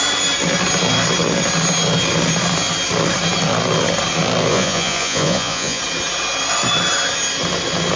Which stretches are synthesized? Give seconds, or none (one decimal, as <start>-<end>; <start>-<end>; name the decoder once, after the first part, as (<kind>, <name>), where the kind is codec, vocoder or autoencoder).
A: 4.5-5.8 (vocoder, Vocos)